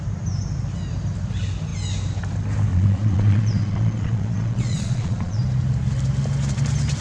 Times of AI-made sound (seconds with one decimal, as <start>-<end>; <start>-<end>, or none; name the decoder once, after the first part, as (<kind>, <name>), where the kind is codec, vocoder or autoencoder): 2.7-5.4 (vocoder, Vocos)